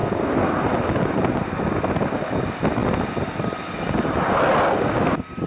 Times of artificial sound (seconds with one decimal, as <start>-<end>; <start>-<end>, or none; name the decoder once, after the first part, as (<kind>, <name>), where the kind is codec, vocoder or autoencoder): none